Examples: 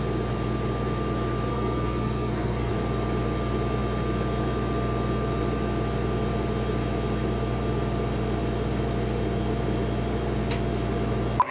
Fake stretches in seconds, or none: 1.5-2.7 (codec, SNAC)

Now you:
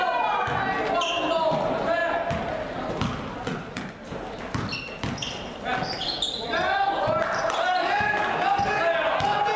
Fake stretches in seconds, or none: none

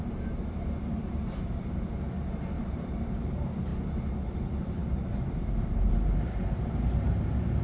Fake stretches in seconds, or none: 0.0-3.7 (vocoder, BigVGAN v2); 4.3-7.6

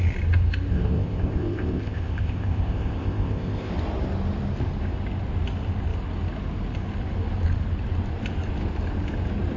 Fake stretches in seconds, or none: 0.7-3.7 (codec, ZipCodec)

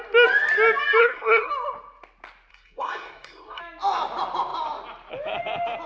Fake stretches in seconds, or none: 1.0-1.5 (codec, SNAC); 2.5-3.6

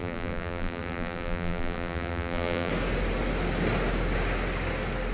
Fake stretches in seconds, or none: 0.0-2.7 (vocoder, BigVGAN v2)

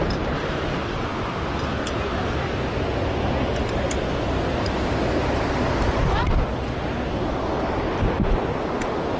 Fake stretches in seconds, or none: 3.5-4.5 (vocoder, BigVGAN v2)

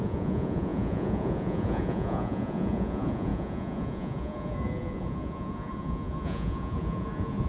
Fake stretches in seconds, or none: 0.0-7.5 (vocoder, Vocos)